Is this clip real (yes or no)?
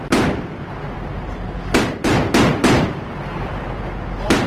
yes